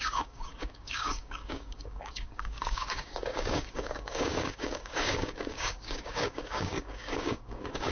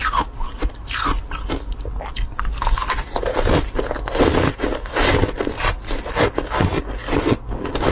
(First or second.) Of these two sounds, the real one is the second